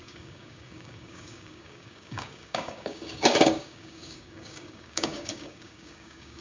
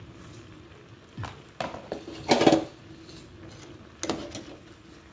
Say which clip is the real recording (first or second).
second